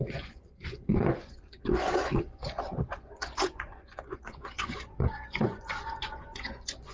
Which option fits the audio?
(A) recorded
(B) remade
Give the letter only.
B